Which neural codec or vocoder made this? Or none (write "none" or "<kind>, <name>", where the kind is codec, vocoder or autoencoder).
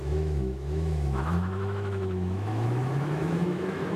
autoencoder, DAC-VAE